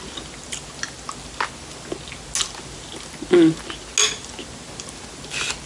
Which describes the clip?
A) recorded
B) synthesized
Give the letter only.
A